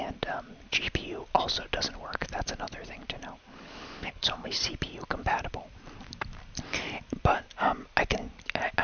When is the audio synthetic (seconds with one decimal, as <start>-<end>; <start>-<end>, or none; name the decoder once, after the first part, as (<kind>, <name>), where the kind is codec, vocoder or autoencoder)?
3.5-4.6 (codec, HILCodec)